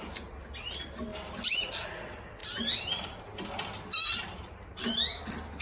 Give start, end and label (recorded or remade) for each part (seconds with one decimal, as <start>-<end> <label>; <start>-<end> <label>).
0.0-5.6 recorded